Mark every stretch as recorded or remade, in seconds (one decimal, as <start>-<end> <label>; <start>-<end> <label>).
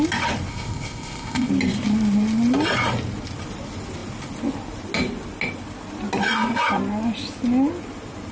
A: 0.0-0.5 recorded; 0.5-1.5 remade; 1.5-8.3 recorded